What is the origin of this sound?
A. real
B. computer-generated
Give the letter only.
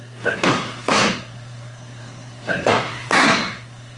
B